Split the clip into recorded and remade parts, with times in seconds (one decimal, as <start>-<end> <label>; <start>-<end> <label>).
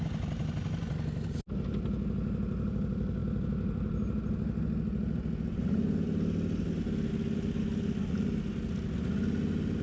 0.0-9.8 recorded